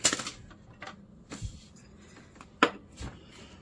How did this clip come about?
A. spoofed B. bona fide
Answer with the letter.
B